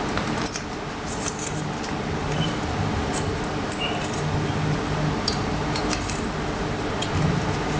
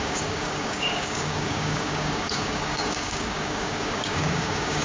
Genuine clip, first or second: first